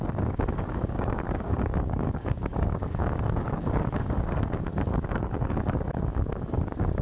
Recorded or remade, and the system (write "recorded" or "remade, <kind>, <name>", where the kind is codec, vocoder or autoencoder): remade, codec, DAC